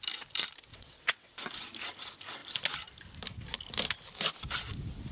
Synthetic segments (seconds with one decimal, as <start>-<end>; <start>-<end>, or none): 0.7-1.3